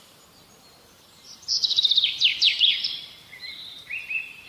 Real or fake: fake